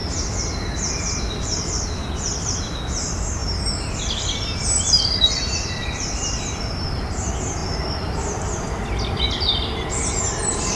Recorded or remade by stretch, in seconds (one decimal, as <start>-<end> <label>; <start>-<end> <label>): 0.0-1.2 recorded; 1.2-10.8 remade